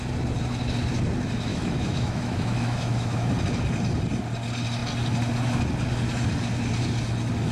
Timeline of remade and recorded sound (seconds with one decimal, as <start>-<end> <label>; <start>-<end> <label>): 0.0-1.5 recorded; 1.5-3.3 remade; 3.3-7.5 recorded